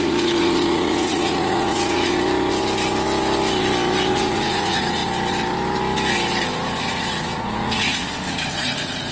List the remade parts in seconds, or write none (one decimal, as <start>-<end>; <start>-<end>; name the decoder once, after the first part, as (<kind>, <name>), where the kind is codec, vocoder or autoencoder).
0.0-2.1 (vocoder, Vocos); 4.1-5.0; 6.8-9.1